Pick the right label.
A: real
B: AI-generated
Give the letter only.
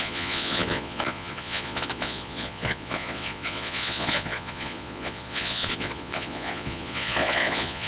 B